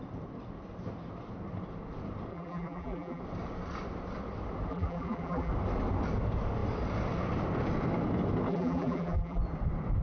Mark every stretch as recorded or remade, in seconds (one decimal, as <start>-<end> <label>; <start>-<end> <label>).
0.0-2.3 recorded; 2.3-3.2 remade; 3.2-4.7 recorded; 4.7-5.5 remade; 5.5-8.5 recorded; 8.5-9.4 remade; 9.4-10.0 recorded